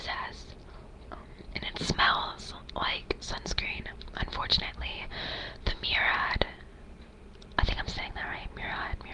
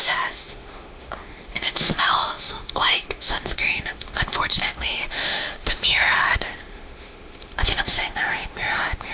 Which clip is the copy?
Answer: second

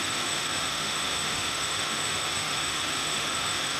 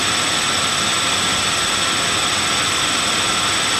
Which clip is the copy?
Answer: first